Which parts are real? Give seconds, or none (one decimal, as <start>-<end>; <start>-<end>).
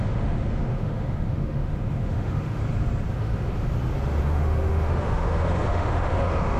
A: 2.6-3.1; 3.7-4.2